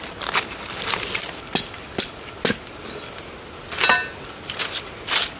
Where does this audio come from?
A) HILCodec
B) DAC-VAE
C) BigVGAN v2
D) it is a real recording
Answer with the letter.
D